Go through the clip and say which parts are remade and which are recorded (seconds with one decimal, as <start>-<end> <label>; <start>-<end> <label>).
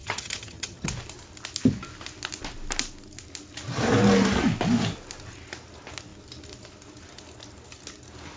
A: 0.0-0.9 remade; 0.9-8.4 recorded